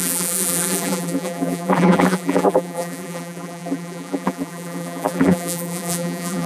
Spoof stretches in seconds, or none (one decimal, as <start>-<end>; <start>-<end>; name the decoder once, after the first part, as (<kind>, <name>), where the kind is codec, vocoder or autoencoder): 0.0-6.5 (vocoder, BigVGAN v2)